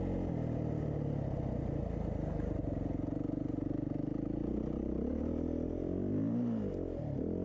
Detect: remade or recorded recorded